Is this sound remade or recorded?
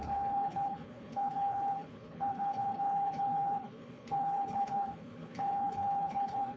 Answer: remade